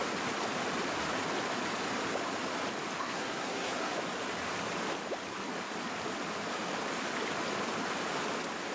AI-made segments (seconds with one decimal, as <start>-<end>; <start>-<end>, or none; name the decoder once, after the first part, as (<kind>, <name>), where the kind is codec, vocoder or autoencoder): 3.0-3.9 (codec, SNAC)